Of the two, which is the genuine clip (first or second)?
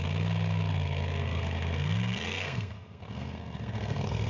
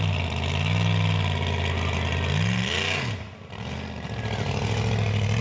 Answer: second